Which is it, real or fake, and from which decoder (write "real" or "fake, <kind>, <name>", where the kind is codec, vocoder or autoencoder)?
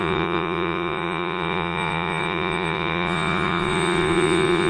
fake, vocoder, Vocos